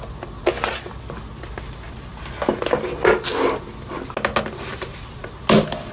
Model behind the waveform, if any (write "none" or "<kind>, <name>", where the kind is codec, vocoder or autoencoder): none